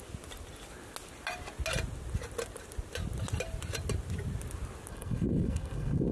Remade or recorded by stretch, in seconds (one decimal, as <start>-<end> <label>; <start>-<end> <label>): 0.0-4.9 recorded; 4.9-6.1 remade